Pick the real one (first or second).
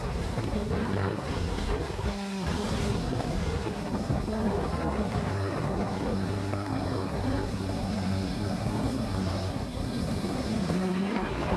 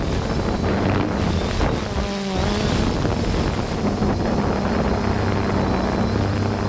second